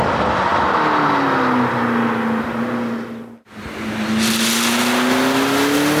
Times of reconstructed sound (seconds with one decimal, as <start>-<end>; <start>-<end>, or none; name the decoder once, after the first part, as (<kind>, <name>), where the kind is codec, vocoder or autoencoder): none